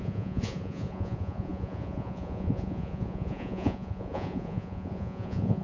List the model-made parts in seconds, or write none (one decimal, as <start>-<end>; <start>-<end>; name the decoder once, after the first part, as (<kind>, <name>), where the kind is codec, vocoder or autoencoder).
0.0-5.6 (vocoder, Vocos)

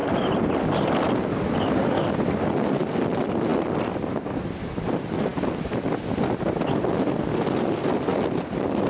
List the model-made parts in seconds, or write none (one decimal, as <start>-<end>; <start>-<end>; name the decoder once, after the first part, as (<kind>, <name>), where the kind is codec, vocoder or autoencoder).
0.0-0.5 (vocoder, BigVGAN v2)

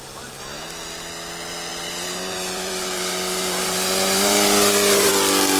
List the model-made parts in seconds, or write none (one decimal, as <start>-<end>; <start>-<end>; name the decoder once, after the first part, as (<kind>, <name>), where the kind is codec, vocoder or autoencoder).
1.7-5.1 (vocoder, BigVGAN v2)